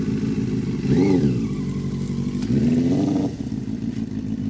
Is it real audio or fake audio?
real